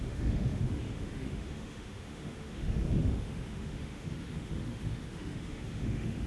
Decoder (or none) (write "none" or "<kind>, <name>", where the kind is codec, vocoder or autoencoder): autoencoder, DAC-VAE